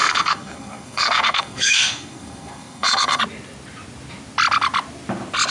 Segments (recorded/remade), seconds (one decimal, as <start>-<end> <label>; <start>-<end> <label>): 0.0-3.2 remade; 3.2-5.5 recorded